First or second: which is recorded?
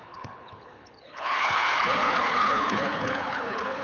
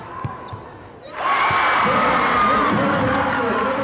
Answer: second